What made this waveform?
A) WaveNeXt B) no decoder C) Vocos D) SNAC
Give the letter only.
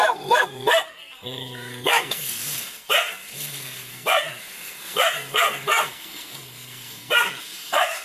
D